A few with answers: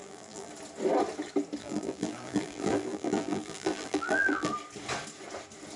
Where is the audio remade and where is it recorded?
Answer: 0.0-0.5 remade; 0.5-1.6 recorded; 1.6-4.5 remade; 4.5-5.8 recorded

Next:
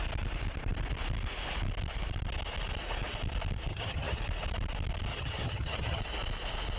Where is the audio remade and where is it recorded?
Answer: 0.0-3.7 recorded; 3.7-4.2 remade; 4.2-5.1 recorded; 5.1-6.0 remade; 6.0-6.8 recorded

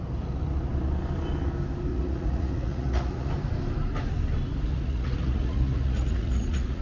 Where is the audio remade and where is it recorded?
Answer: 0.0-1.9 recorded; 1.9-3.3 remade; 3.3-4.7 recorded; 4.7-6.8 remade

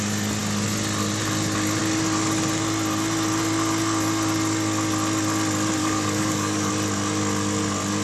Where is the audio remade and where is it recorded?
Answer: 0.0-5.8 recorded; 5.8-6.7 remade; 6.7-8.0 recorded